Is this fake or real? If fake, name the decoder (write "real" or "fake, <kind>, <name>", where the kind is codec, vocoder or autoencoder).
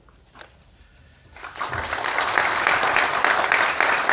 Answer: real